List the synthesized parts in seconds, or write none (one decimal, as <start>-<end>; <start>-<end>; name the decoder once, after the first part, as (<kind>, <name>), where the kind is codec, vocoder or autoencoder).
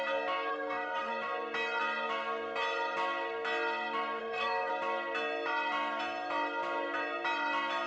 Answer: 0.5-1.1 (codec, SNAC); 4.2-4.7